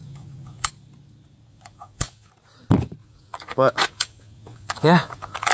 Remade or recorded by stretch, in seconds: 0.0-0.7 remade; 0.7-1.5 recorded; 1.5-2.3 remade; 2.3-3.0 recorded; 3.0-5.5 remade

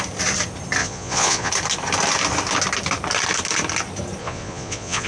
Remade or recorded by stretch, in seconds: 0.0-0.8 recorded; 0.8-1.5 remade; 1.5-4.2 recorded; 4.2-5.1 remade

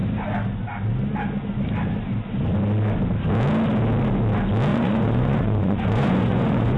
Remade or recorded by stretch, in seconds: 0.0-4.7 recorded; 4.7-6.8 remade

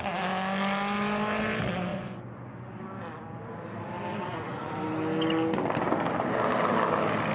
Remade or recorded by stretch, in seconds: 0.0-1.9 recorded; 1.9-2.8 remade; 2.8-4.1 recorded; 4.1-4.7 remade; 4.7-7.3 recorded

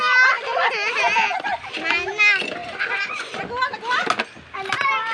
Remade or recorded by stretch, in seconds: 0.0-2.6 recorded; 2.6-3.4 remade; 3.4-5.1 recorded